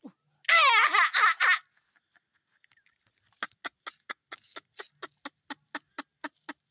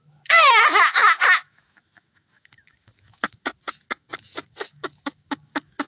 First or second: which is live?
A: first